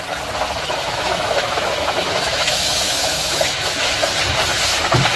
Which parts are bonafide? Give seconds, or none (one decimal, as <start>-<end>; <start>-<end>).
0.0-0.8; 3.9-5.2